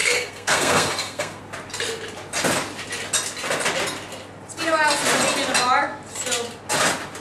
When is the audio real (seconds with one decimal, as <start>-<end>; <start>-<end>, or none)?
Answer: 1.4-7.2